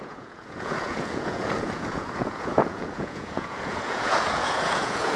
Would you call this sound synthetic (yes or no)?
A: yes